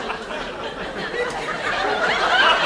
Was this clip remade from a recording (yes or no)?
no